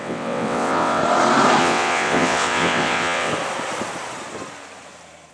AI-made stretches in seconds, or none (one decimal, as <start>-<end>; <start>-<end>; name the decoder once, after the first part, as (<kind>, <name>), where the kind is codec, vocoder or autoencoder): 0.0-1.0 (vocoder, WaveNeXt); 1.6-3.3